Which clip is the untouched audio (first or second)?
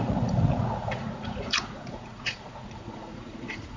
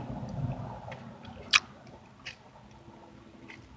second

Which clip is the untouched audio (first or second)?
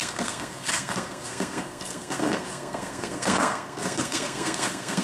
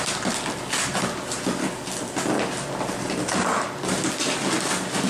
second